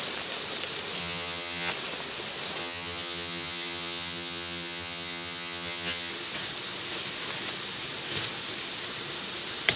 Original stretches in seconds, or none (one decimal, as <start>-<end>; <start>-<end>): 0.0-1.0; 1.7-2.6; 6.1-9.8